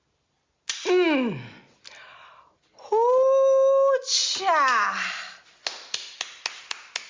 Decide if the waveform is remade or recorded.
recorded